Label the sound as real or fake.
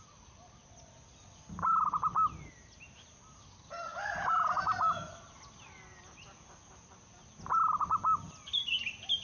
real